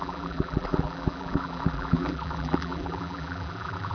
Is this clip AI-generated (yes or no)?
yes